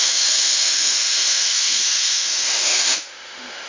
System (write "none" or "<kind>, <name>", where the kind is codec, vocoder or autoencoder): autoencoder, DAC-VAE